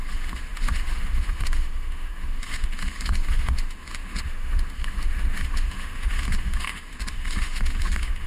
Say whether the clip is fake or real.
fake